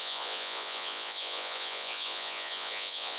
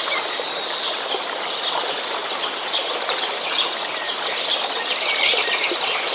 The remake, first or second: first